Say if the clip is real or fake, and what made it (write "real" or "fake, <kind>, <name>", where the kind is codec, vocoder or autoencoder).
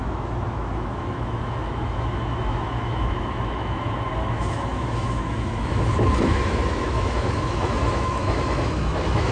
fake, autoencoder, DAC-VAE